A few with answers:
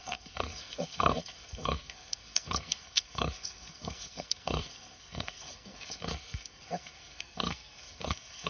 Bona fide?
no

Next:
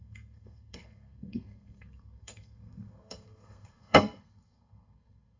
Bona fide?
no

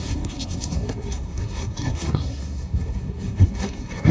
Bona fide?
no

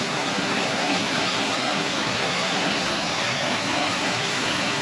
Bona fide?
no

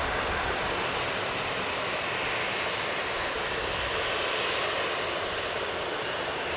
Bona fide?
yes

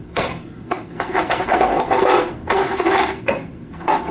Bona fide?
no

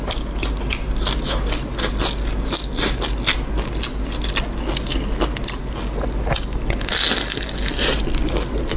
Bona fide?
yes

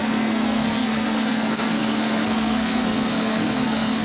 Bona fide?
no